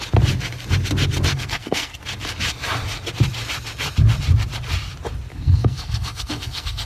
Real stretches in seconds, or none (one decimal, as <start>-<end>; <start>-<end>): 0.0-1.3; 2.0-5.3